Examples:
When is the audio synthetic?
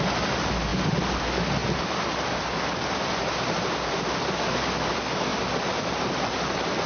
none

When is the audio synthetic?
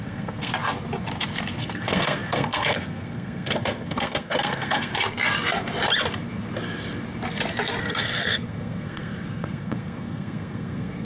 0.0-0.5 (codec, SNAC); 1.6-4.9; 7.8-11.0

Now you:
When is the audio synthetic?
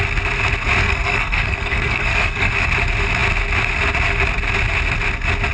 0.8-2.5 (codec, SNAC)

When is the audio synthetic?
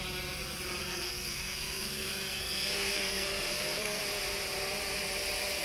0.8-4.0 (codec, SNAC)